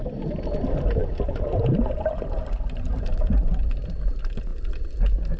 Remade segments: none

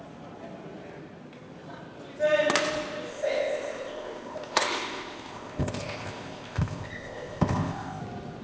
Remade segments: 3.1-8.0 (codec, ZipCodec)

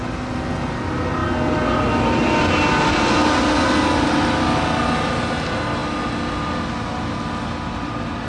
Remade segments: none

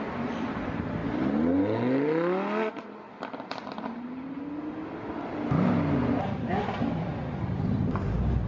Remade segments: none

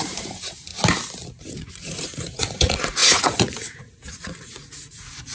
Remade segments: 0.0-0.7 (vocoder, Vocos); 1.4-5.3

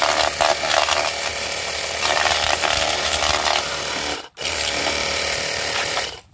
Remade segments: 1.3-3.2 (vocoder, BigVGAN v2); 3.7-6.3

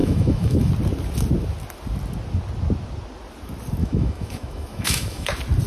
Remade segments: 0.0-0.7 (autoencoder, DAC-VAE); 3.8-5.3